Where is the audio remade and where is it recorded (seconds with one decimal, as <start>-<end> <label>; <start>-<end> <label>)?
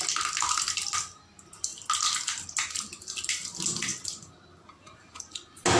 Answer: 0.0-5.8 recorded